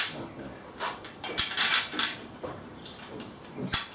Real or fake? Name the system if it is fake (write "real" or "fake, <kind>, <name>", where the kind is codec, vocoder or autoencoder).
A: real